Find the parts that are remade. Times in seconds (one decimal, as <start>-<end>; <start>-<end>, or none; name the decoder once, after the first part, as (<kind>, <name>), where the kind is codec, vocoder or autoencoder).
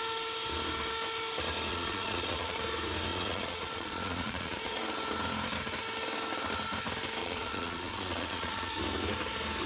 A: 1.7-2.6 (vocoder, Vocos); 3.1-4.8; 7.2-8.8